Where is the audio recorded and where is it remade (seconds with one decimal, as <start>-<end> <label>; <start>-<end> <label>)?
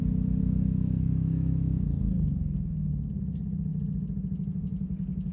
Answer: 0.0-0.4 recorded; 0.4-2.9 remade; 2.9-5.3 recorded